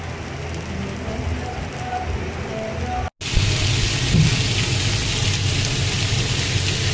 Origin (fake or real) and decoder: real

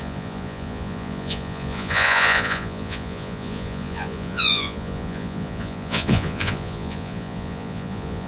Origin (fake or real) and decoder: fake, vocoder, Vocos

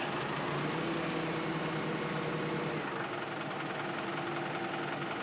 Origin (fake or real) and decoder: real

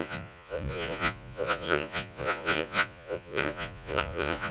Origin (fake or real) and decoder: fake, vocoder, Vocos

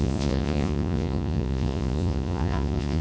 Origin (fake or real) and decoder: fake, vocoder, Vocos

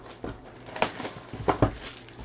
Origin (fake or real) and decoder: real